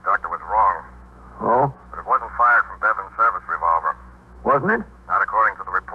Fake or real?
fake